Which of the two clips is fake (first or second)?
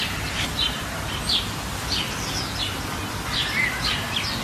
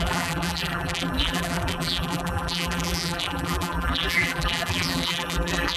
second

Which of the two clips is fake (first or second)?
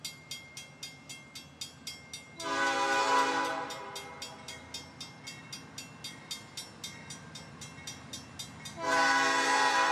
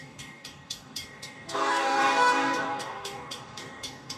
second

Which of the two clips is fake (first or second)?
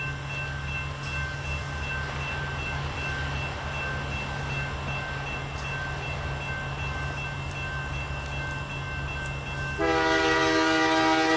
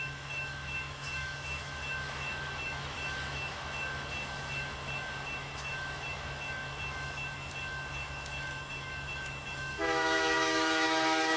second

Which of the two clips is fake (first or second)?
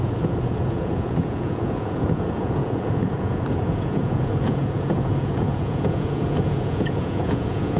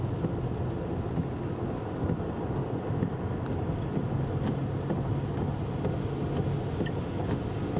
first